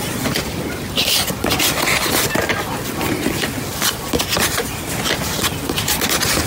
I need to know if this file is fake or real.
real